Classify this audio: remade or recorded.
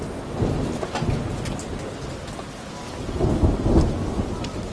recorded